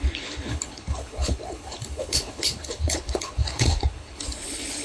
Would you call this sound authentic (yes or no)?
no